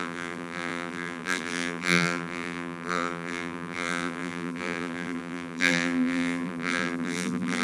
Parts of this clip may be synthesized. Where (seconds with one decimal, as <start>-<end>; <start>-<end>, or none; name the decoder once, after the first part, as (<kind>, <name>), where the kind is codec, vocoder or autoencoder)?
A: 0.0-7.6 (vocoder, BigVGAN v2)

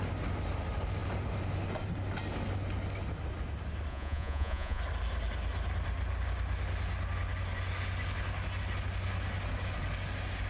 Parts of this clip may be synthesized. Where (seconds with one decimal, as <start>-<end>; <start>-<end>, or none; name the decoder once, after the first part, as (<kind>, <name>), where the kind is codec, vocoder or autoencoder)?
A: 3.9-4.8 (vocoder, Vocos)

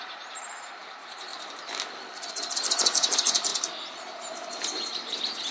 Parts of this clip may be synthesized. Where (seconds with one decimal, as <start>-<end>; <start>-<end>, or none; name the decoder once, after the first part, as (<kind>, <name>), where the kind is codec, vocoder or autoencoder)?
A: 0.0-1.3 (vocoder, BigVGAN v2); 2.3-3.5; 4.2-5.5

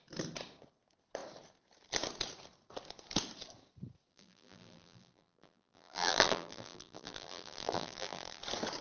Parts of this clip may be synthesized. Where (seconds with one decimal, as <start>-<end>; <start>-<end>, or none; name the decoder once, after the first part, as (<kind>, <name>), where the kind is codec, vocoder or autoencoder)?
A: 4.1-8.4 (vocoder, BigVGAN v2)